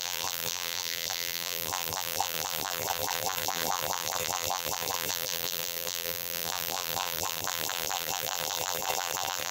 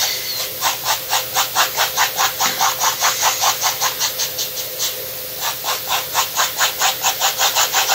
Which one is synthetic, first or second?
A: first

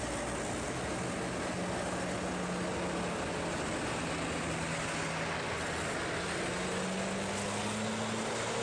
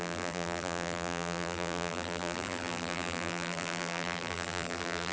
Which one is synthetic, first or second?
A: second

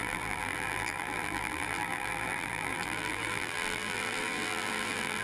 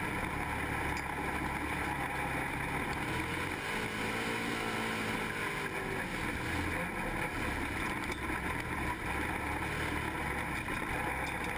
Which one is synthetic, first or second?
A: first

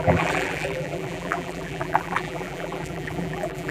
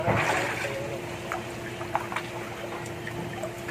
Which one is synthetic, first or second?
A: first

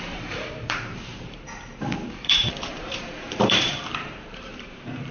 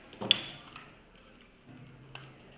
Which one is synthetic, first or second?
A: first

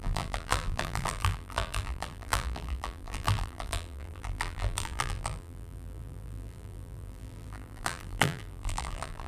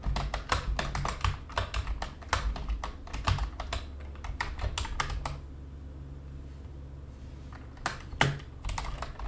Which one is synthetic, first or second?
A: first